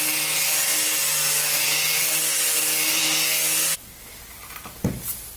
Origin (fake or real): real